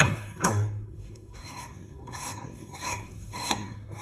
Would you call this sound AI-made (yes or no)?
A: yes